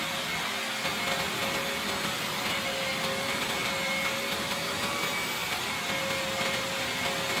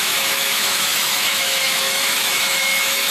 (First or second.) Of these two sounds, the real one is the first